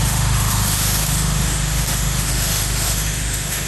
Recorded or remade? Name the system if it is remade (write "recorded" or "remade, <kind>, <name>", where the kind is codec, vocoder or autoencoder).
remade, autoencoder, DAC-VAE